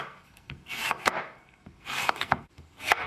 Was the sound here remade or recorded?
remade